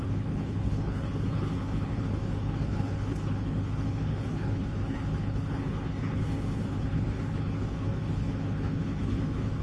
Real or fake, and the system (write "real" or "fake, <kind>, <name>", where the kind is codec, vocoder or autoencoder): fake, codec, HILCodec